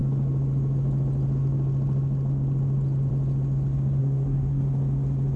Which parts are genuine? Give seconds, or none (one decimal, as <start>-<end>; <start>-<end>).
0.0-4.0; 4.6-5.4

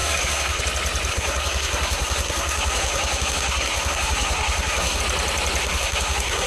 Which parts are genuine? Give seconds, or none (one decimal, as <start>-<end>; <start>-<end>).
0.6-1.1; 5.0-5.6

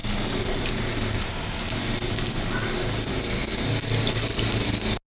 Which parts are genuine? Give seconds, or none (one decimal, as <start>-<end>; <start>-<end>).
0.0-5.1

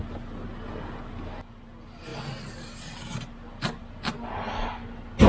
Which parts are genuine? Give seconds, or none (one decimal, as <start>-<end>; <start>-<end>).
0.0-5.3

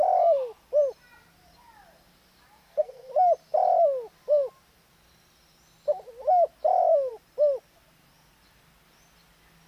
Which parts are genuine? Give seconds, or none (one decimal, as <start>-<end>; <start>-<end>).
0.0-2.6; 3.1-9.7